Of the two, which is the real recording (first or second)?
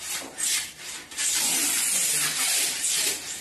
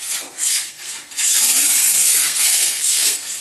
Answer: first